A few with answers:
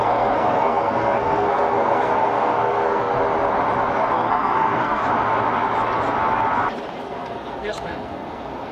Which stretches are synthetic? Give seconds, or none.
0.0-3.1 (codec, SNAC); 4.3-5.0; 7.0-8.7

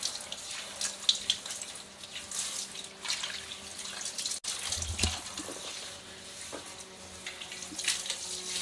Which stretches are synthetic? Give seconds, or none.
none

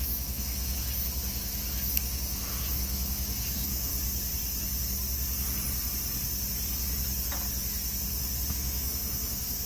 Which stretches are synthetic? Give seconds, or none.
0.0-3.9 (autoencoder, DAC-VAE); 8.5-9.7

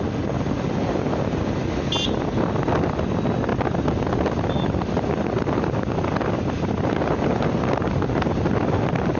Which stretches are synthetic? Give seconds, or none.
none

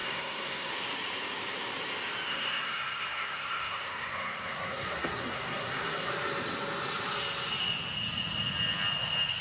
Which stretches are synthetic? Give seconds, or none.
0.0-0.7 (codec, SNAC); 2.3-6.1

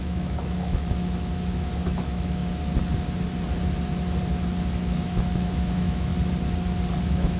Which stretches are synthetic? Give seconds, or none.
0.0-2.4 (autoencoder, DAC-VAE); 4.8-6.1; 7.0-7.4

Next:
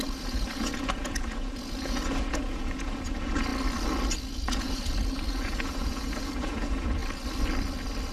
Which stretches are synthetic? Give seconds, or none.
0.0-3.5 (vocoder, Vocos); 4.2-7.0